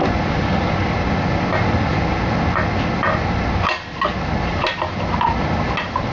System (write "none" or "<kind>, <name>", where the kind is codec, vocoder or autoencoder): none